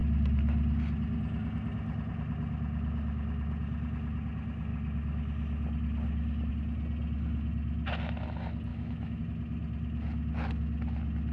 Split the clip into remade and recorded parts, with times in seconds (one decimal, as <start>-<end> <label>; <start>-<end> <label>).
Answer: 0.0-8.7 recorded; 8.7-9.2 remade; 9.2-11.3 recorded